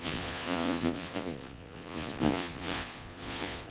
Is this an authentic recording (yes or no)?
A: no